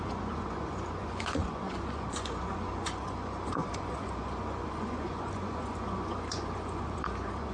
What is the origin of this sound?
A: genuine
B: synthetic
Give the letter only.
B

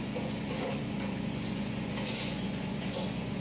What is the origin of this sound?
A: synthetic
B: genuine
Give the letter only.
A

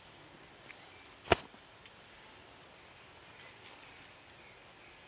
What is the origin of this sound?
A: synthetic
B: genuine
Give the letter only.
B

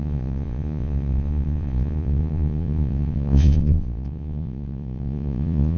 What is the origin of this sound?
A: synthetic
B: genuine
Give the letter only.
A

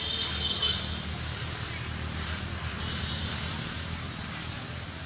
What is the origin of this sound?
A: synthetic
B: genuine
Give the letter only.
B